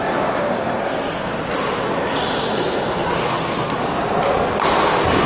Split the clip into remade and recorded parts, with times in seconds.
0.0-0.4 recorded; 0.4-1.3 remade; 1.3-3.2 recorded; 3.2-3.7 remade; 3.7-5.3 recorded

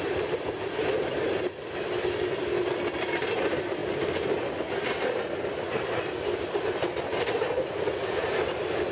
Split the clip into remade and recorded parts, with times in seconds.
0.0-8.9 recorded

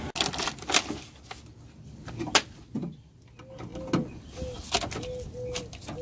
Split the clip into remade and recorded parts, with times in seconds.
0.0-6.0 recorded

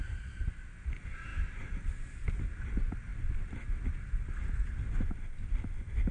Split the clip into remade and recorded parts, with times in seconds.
0.0-6.1 recorded

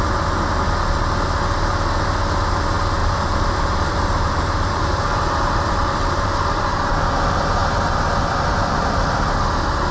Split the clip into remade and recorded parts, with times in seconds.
0.0-3.0 recorded; 3.0-6.9 remade; 6.9-7.6 recorded; 7.6-9.3 remade; 9.3-9.9 recorded

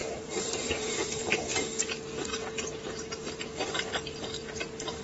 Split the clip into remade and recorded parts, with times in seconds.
0.0-1.5 remade; 1.5-4.4 recorded; 4.4-5.0 remade

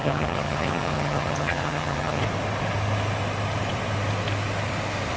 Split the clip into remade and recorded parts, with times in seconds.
0.0-2.2 remade; 2.2-5.2 recorded